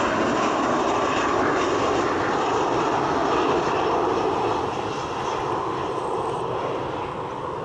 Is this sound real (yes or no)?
yes